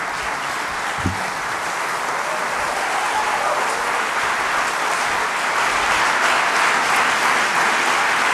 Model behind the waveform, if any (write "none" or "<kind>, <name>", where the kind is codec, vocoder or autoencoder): none